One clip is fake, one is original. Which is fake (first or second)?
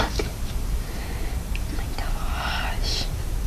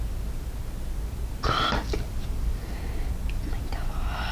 first